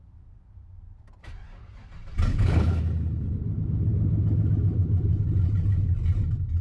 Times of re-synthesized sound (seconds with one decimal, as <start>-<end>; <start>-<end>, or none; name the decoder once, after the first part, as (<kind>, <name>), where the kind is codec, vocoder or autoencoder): 2.3-2.8 (codec, HILCodec)